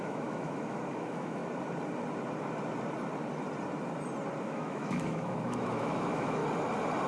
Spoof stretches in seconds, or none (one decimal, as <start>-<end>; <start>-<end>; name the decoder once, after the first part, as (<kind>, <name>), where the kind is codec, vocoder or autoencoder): 0.0-1.4 (autoencoder, DAC-VAE); 4.4-6.4